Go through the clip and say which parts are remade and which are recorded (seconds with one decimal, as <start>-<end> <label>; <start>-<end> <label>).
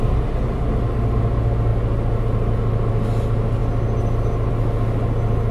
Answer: 0.0-5.5 recorded